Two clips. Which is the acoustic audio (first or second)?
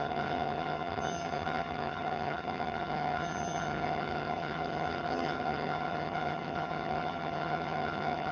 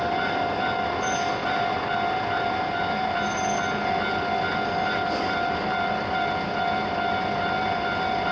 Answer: second